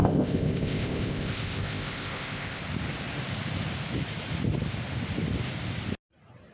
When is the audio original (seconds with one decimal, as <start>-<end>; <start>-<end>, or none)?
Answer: 2.6-6.5